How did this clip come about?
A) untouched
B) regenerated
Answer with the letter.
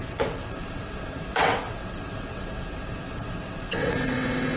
B